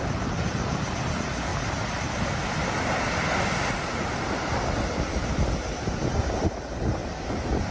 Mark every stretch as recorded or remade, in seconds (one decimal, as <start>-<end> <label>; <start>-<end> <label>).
0.0-1.5 remade; 1.5-5.7 recorded; 5.7-7.0 remade; 7.0-7.7 recorded